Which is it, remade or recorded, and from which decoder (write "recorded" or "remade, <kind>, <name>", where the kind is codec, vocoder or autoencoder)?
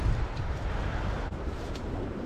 remade, vocoder, BigVGAN v2